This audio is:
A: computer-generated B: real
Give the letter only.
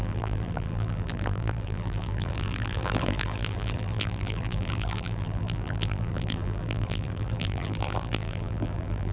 A